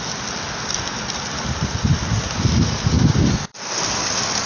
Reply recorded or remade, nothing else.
recorded